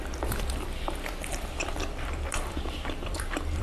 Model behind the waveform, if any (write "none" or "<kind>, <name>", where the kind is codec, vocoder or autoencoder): vocoder, BigVGAN v2